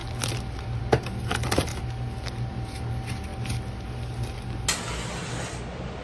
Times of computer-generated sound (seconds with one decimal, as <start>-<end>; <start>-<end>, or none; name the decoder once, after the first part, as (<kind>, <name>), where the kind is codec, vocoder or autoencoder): none